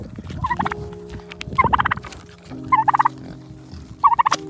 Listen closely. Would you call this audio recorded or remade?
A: recorded